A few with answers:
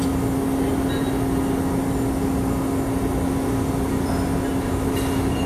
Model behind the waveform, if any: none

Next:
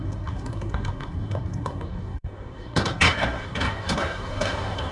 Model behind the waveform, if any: codec, SNAC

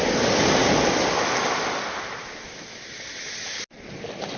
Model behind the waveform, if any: none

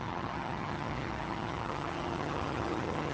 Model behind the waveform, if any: vocoder, HiFi-GAN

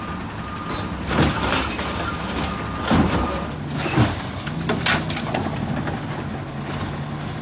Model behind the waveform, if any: none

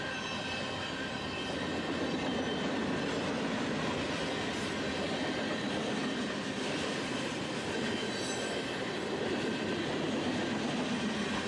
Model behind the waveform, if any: none